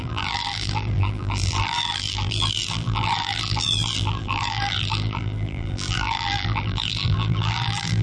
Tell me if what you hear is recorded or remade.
remade